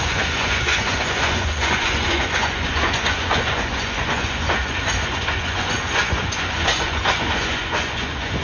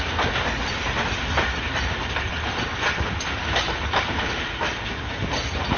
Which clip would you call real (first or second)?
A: second